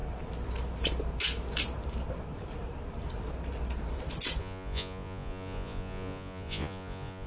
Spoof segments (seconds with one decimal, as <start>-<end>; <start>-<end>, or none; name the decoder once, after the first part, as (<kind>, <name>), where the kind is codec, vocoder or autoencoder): 4.4-7.3 (vocoder, Vocos)